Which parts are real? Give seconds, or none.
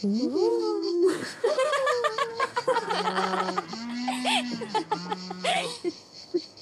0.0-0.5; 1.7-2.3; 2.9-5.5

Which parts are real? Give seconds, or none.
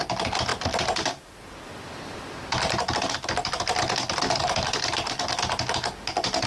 0.0-6.5